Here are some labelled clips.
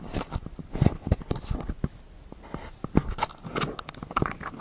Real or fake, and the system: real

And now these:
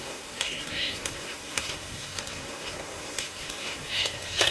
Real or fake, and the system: fake, codec, SNAC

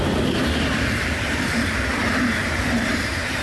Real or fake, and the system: fake, vocoder, BigVGAN v2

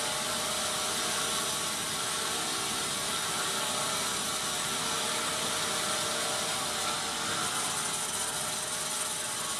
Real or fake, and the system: real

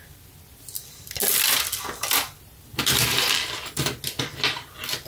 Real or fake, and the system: real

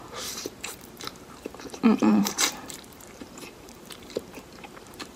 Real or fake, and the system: fake, vocoder, BigVGAN v2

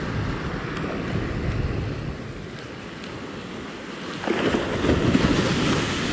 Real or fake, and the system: real